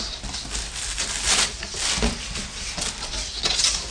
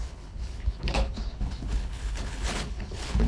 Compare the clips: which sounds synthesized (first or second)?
second